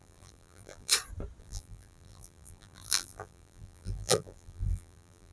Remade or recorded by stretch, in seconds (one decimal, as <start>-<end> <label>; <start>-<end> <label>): 0.0-0.9 remade; 0.9-1.4 recorded; 1.4-5.3 remade